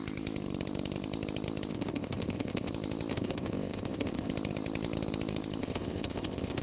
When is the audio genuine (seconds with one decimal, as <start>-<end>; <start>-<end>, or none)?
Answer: 0.0-1.7; 2.7-3.1; 4.3-5.6